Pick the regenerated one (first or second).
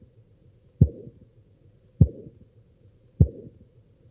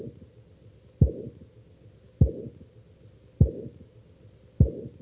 first